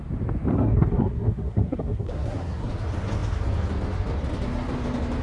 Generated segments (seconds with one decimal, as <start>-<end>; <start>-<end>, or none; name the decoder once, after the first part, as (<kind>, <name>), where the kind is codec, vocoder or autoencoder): 0.5-2.7 (codec, SNAC)